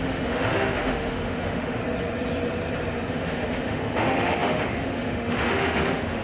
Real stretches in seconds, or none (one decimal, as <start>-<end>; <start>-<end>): 1.8-3.1

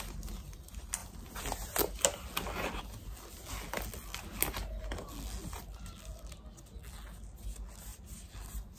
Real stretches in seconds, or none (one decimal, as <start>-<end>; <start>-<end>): 0.0-8.8